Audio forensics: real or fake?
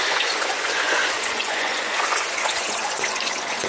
fake